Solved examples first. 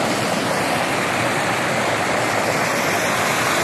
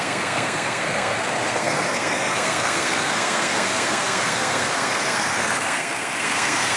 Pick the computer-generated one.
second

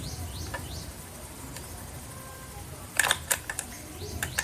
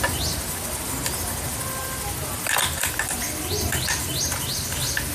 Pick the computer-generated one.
first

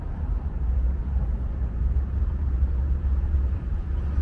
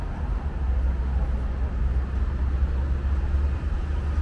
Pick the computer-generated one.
first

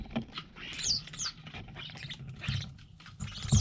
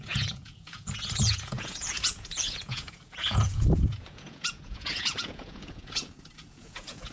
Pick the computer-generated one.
second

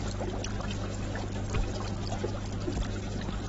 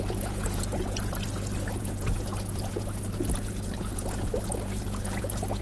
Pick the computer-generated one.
second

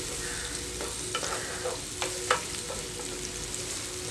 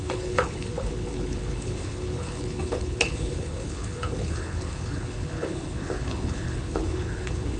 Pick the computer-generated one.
second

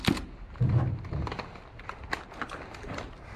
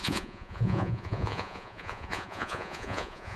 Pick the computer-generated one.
second